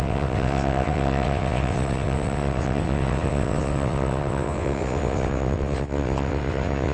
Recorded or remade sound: remade